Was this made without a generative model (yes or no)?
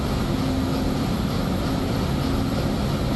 yes